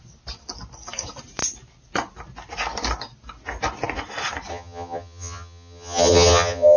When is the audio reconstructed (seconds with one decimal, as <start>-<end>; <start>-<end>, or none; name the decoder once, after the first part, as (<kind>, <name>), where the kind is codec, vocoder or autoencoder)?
4.5-6.8 (vocoder, HiFi-GAN)